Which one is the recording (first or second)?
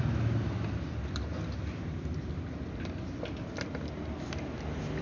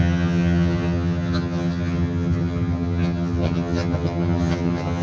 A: first